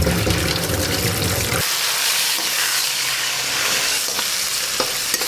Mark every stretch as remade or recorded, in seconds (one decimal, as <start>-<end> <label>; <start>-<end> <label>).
0.0-2.0 recorded; 2.0-4.2 remade; 4.2-5.3 recorded